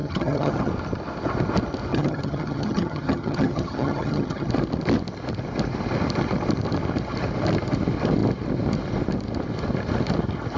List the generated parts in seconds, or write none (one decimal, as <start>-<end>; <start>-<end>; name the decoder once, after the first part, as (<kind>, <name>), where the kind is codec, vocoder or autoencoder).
0.0-0.7 (vocoder, HiFi-GAN); 1.9-4.5